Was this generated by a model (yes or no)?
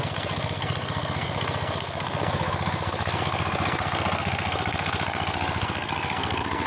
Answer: yes